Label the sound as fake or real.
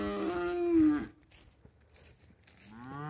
real